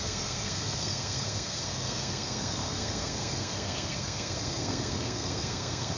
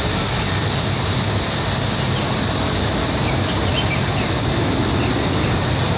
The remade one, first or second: first